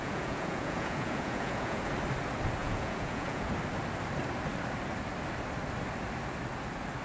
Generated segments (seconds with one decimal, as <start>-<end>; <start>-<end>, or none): 0.0-1.8; 2.6-3.5